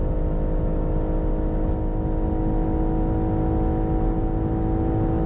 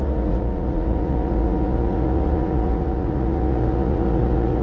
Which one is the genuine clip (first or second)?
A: first